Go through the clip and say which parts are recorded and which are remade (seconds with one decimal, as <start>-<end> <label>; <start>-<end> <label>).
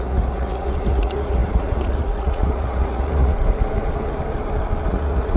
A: 0.0-3.3 remade; 3.3-4.9 recorded; 4.9-5.4 remade